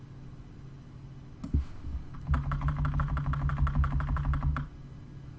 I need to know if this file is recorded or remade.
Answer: recorded